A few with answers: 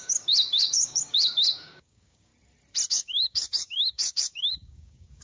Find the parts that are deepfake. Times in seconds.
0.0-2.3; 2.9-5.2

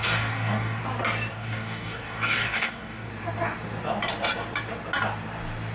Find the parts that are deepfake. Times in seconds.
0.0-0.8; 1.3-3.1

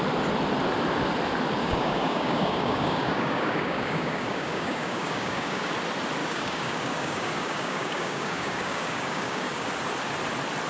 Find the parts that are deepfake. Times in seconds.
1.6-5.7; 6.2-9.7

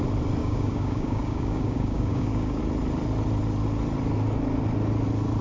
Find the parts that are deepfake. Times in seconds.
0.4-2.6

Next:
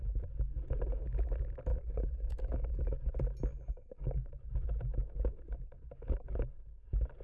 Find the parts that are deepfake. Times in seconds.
1.7-3.1; 3.5-4.3

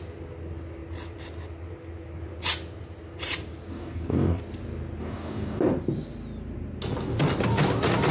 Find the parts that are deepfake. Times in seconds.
3.7-4.4; 5.0-5.6

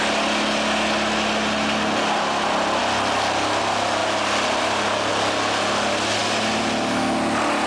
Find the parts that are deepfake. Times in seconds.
none